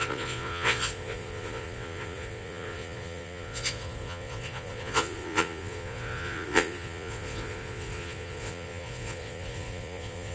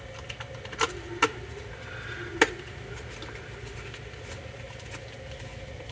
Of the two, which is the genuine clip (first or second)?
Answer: second